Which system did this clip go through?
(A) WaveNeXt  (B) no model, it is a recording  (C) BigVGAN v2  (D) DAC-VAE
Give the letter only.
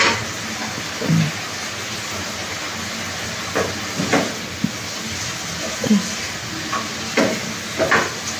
B